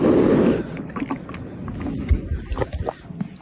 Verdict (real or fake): real